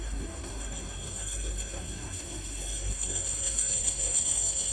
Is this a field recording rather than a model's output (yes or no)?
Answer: no